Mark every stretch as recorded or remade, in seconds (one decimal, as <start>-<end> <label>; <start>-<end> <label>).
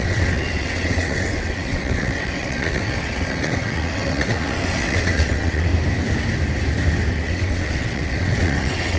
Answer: 0.0-5.7 remade; 5.7-7.1 recorded; 7.1-9.0 remade